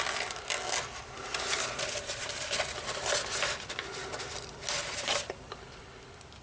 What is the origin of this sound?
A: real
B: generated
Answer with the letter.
A